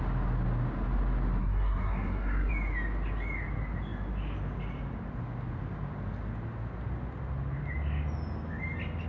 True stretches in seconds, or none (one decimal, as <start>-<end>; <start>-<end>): 0.0-1.4; 2.5-9.1